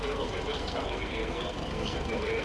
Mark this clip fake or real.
fake